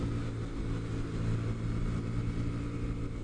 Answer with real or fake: real